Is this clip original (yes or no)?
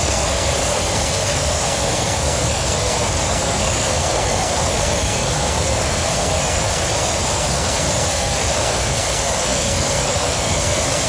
no